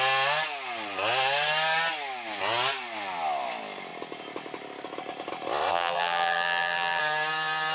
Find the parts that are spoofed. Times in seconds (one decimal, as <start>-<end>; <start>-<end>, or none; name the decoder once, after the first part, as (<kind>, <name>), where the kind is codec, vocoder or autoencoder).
5.7-7.0 (vocoder, BigVGAN v2)